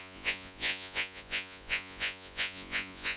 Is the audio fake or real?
fake